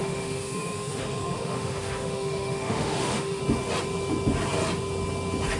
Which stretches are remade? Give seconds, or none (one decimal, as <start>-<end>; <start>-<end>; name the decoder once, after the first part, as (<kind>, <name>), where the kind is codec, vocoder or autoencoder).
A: 0.0-3.4 (autoencoder, DAC-VAE)